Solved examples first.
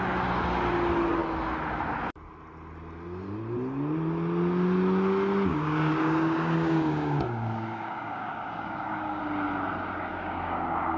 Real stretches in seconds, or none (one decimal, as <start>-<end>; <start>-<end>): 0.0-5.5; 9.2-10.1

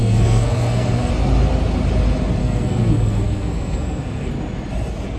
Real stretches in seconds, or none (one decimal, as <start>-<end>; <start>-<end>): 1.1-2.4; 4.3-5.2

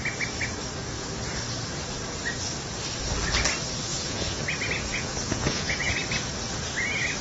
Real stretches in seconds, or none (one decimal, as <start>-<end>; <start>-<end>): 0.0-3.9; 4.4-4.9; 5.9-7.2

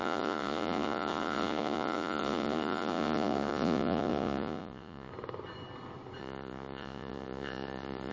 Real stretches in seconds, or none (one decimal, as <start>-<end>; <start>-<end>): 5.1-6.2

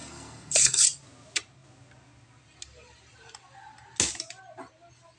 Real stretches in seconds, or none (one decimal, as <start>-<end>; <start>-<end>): 0.8-5.2